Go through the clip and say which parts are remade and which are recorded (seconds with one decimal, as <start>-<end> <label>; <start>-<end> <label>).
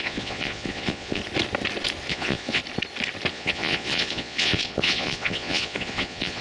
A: 0.0-1.2 remade; 1.2-2.1 recorded; 2.1-2.6 remade; 2.6-3.3 recorded; 3.3-6.4 remade